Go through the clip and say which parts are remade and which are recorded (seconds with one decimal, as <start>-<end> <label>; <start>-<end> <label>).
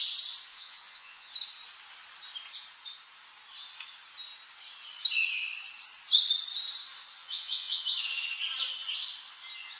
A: 0.0-0.5 recorded; 0.5-1.3 remade; 1.3-7.2 recorded; 7.2-7.8 remade; 7.8-9.8 recorded